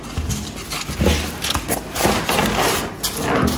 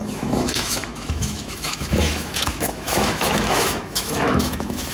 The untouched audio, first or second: first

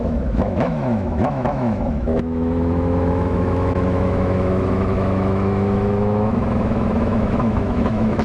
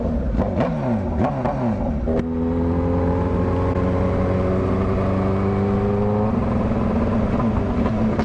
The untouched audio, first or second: second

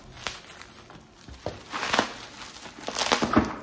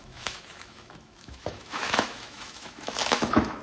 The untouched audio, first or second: first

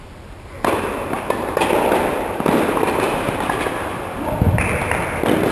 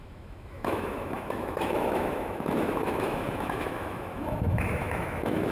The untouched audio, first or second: first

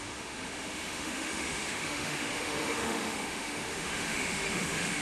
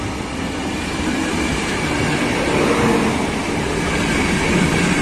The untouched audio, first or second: second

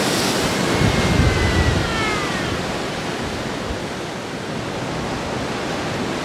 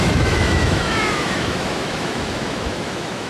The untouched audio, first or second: first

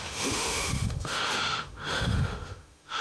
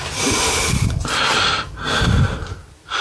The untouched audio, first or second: second